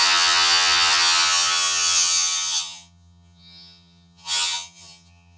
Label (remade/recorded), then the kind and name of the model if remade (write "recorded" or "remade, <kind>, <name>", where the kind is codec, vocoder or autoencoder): remade, vocoder, HiFi-GAN